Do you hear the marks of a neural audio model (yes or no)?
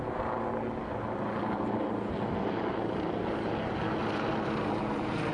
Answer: no